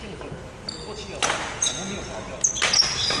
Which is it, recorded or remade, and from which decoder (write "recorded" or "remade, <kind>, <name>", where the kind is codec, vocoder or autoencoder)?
recorded